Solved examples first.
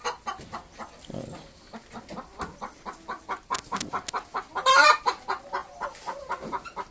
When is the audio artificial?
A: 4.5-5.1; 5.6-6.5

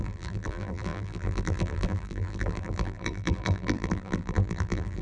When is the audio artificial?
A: 0.0-5.0

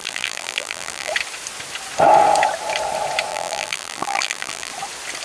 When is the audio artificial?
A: 0.0-1.1; 3.3-4.7

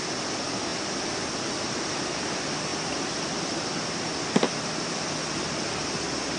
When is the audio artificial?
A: 2.7-3.8